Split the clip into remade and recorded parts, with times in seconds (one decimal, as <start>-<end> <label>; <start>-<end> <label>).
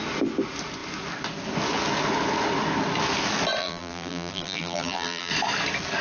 0.0-3.6 recorded; 3.6-5.3 remade; 5.3-6.0 recorded